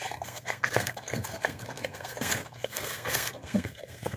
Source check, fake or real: fake